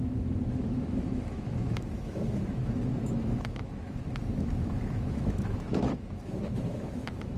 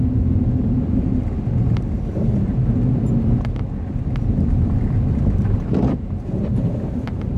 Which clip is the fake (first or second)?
first